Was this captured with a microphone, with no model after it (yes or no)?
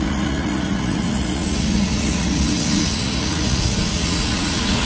no